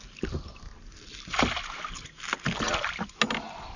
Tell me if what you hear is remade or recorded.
recorded